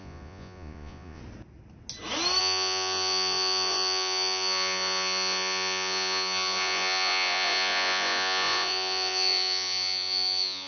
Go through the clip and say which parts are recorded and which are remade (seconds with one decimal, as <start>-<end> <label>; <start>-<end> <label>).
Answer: 0.0-1.2 remade; 1.2-2.4 recorded; 2.4-10.7 remade